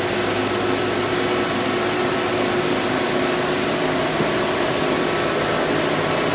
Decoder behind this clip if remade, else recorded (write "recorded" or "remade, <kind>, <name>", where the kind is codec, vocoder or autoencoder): recorded